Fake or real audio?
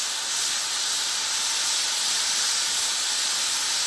real